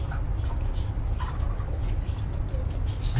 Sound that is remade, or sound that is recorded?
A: recorded